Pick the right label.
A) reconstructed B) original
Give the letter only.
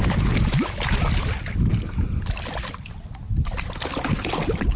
B